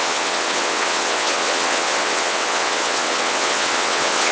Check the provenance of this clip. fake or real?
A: fake